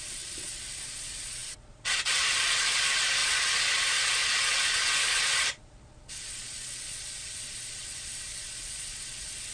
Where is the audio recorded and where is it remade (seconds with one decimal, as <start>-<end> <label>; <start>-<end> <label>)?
0.0-9.5 remade

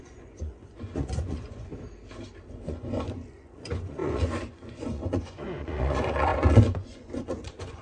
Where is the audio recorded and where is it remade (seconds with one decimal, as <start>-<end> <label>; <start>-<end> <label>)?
0.0-1.7 remade; 1.7-2.5 recorded; 2.5-7.8 remade

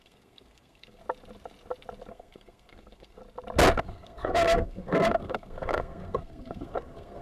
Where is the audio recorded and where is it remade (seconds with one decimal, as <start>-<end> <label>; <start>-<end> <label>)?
0.0-1.0 remade; 1.0-2.1 recorded; 2.1-3.2 remade; 3.2-3.8 recorded; 3.8-7.2 remade

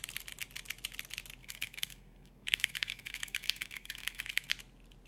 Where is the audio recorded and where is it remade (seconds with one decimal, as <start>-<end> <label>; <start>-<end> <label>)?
0.0-1.4 recorded; 1.4-4.5 remade; 4.5-5.1 recorded

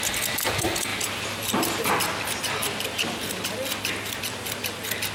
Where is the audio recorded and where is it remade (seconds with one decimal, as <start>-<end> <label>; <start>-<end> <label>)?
0.0-0.9 recorded; 0.9-1.9 remade; 1.9-5.1 recorded